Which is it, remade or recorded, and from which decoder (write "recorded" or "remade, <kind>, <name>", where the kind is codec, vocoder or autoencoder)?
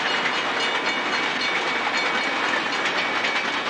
recorded